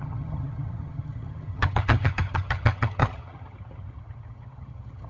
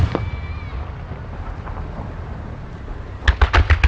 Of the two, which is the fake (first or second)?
first